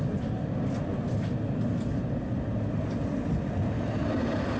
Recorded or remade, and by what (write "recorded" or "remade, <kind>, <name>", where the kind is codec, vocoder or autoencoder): recorded